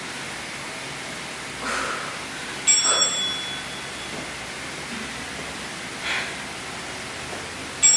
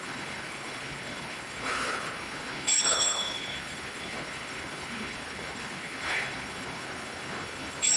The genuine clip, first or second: first